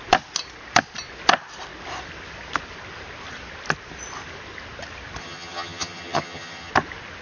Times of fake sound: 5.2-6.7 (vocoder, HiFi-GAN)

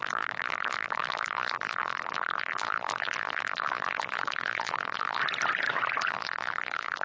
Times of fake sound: 0.0-5.2 (vocoder, BigVGAN v2); 6.1-7.0

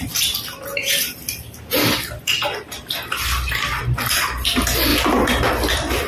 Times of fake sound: 0.0-4.9 (vocoder, BigVGAN v2)

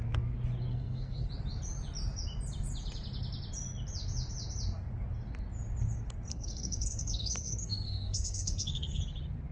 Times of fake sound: 0.7-1.3 (codec, SNAC); 6.3-9.0

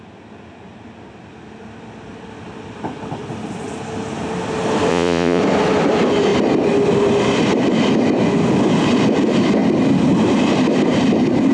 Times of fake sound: 4.9-5.4 (vocoder, Vocos)